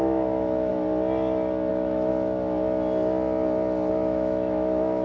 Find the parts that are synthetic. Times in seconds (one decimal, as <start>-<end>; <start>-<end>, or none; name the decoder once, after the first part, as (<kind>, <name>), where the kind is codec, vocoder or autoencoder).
0.0-0.7 (autoencoder, DAC-VAE); 1.7-2.1; 3.9-5.0